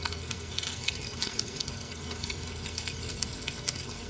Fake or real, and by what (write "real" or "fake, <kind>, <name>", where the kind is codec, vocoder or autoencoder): fake, codec, SNAC